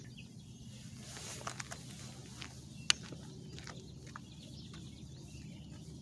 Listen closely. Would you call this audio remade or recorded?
recorded